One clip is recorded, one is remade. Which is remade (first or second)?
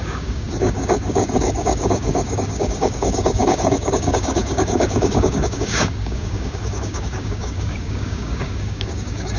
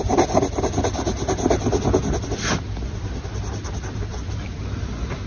first